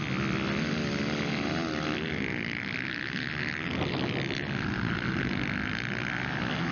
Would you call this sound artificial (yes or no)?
no